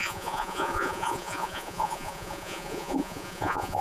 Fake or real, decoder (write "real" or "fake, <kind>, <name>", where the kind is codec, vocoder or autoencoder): fake, vocoder, Vocos